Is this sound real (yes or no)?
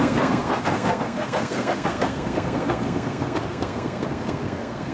no